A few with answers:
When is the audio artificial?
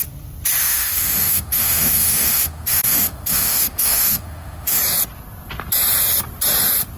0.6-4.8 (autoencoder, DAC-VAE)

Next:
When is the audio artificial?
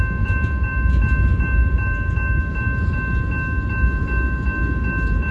none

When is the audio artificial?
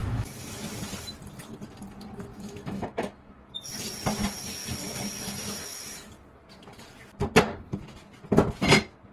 0.0-0.6 (autoencoder, DAC-VAE); 2.3-3.5; 4.6-6.1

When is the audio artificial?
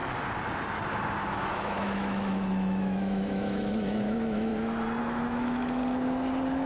1.5-4.5 (autoencoder, DAC-VAE); 5.0-5.8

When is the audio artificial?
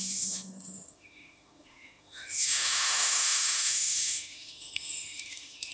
0.0-5.7 (autoencoder, DAC-VAE)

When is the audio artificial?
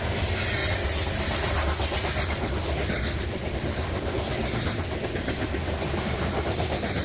none